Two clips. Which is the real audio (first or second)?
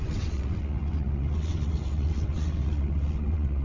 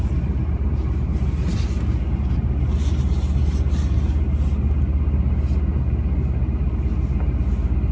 second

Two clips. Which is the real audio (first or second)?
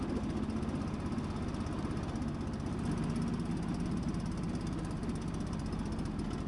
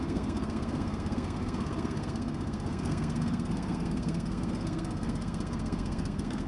first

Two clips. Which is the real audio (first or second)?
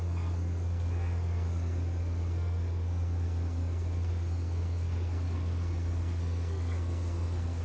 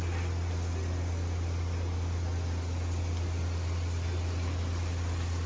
second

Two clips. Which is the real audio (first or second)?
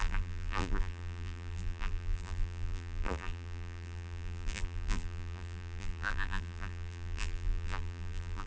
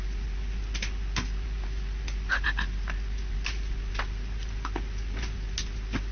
second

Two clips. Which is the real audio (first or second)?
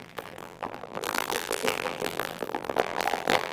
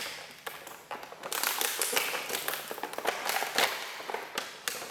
second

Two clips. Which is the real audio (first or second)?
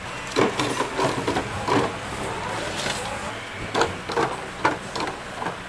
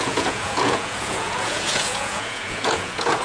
first